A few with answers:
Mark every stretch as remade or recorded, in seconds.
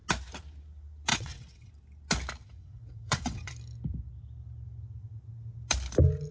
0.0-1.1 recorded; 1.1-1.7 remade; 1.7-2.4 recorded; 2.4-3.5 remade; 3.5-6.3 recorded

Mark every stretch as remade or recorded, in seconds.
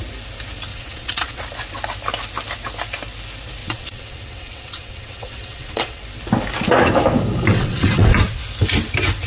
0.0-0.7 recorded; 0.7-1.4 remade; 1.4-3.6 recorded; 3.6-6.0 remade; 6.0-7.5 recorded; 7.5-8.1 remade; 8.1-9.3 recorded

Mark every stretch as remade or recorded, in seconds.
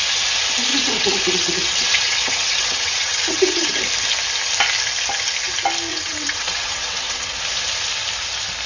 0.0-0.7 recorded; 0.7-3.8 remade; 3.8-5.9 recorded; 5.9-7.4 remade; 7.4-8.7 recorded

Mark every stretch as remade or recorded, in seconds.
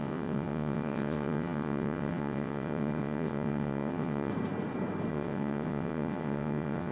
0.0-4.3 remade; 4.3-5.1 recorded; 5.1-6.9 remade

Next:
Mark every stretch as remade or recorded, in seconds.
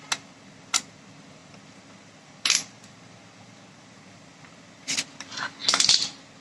0.0-6.4 recorded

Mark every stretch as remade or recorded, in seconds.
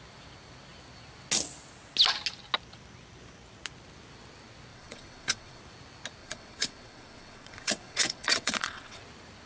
0.0-4.7 recorded; 4.7-5.6 remade; 5.6-6.2 recorded; 6.2-9.0 remade; 9.0-9.5 recorded